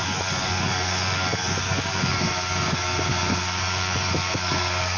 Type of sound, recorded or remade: remade